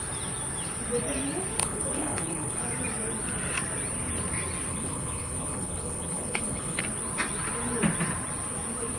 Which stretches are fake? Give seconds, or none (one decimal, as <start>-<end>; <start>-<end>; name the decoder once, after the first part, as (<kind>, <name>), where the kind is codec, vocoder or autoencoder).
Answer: 1.6-2.6 (codec, HILCodec); 4.7-6.8